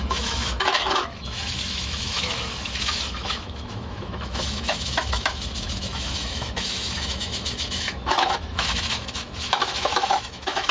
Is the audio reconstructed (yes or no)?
yes